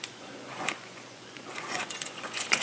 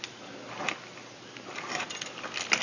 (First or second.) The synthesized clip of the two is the first